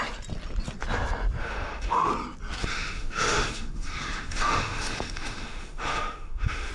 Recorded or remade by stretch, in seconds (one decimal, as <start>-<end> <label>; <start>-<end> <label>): 0.0-1.4 recorded; 1.4-2.1 remade; 2.1-2.6 recorded; 2.6-6.7 remade